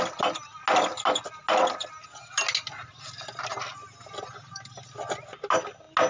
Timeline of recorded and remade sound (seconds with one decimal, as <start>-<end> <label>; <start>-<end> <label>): 0.0-6.1 recorded